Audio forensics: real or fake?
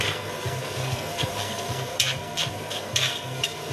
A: fake